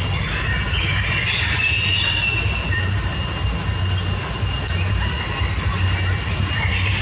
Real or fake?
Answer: real